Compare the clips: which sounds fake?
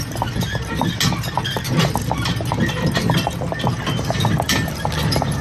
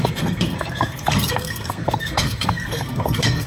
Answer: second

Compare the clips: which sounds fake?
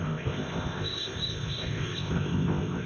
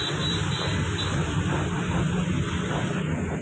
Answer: first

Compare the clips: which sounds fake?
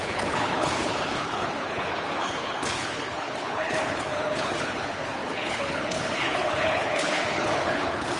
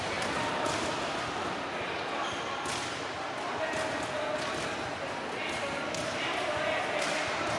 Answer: first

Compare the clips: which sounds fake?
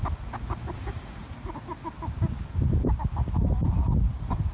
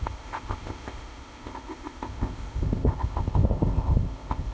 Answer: second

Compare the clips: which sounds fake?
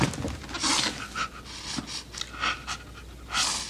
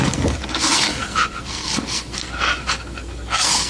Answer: second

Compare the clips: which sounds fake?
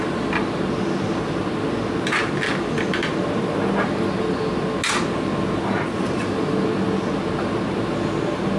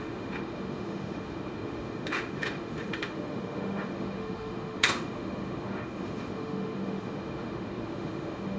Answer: second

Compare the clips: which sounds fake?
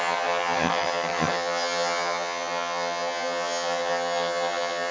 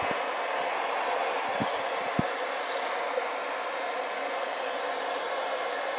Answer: first